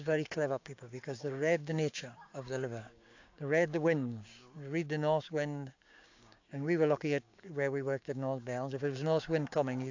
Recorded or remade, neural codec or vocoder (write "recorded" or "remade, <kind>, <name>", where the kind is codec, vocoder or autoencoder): remade, codec, DAC